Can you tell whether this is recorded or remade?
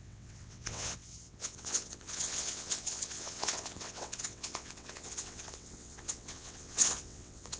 remade